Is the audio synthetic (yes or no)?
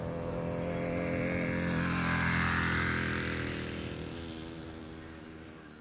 no